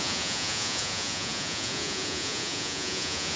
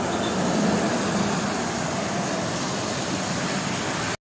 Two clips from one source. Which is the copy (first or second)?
first